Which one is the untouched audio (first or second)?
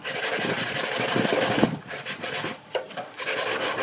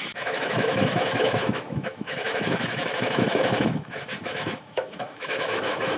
first